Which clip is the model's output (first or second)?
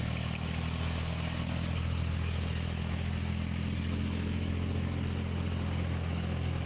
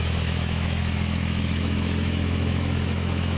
second